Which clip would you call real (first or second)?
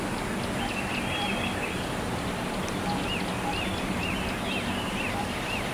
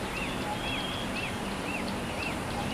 first